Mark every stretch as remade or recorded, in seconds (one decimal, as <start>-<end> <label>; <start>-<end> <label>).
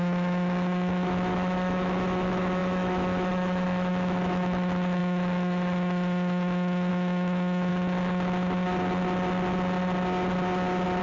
0.0-7.7 remade; 7.7-11.0 recorded